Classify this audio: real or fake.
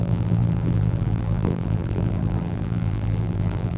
fake